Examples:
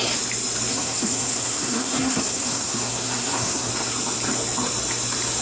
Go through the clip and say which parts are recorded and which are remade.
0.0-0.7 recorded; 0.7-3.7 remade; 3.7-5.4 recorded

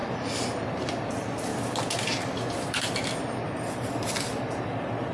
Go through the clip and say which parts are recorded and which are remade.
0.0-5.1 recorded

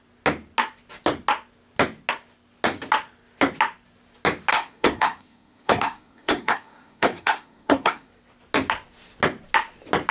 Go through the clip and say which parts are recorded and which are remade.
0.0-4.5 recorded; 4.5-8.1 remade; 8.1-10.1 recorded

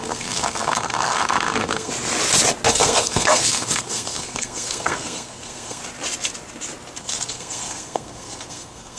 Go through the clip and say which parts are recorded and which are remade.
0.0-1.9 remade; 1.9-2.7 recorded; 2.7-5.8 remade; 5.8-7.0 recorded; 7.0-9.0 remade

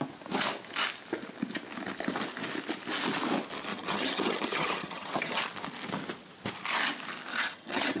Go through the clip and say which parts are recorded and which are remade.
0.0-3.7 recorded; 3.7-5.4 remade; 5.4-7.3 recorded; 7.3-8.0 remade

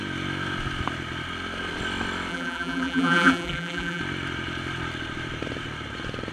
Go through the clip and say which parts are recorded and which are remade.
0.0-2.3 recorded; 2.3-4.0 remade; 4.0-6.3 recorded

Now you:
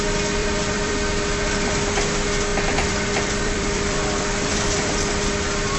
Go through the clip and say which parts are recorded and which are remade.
0.0-0.4 recorded; 0.4-0.9 remade; 0.9-2.5 recorded; 2.5-5.0 remade; 5.0-5.8 recorded

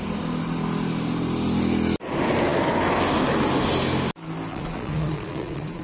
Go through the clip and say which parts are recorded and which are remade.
0.0-4.5 recorded; 4.5-5.8 remade